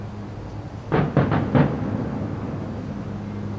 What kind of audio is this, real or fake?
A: real